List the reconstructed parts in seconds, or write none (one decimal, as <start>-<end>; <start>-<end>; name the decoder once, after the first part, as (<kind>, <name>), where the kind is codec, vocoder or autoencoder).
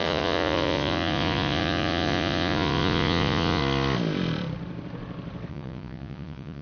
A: 0.0-3.6 (vocoder, Vocos); 5.5-6.6